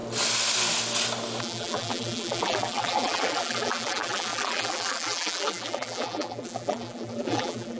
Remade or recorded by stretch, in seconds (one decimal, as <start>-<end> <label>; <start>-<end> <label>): 0.0-1.4 recorded; 1.4-7.8 remade